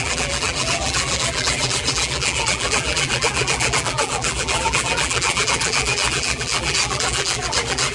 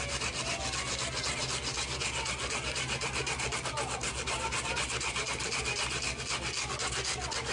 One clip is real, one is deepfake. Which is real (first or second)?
second